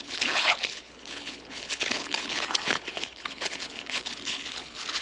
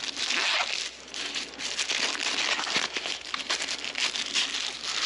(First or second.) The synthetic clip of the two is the first